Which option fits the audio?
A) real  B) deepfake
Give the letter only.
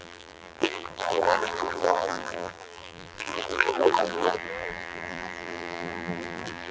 B